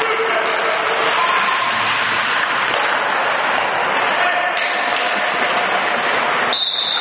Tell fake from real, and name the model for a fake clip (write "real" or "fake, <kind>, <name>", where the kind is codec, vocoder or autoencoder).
real